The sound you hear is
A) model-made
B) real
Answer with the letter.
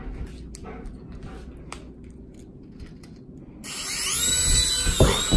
B